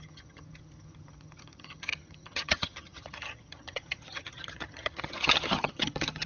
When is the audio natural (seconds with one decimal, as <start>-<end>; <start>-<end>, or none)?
none